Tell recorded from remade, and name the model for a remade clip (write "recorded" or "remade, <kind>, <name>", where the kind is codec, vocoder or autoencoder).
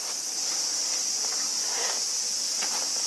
recorded